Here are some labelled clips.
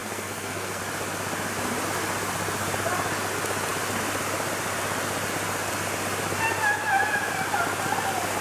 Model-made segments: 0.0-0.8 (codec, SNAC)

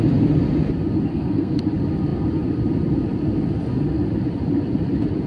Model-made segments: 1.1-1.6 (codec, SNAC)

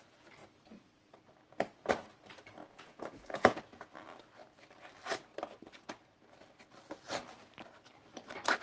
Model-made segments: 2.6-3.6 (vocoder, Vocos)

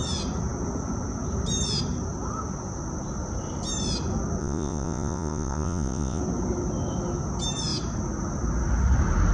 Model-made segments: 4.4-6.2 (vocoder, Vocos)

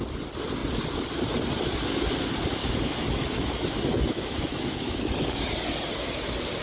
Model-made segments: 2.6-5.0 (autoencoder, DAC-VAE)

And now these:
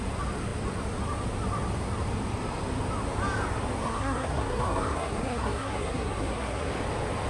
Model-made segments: 3.8-6.7 (codec, SNAC)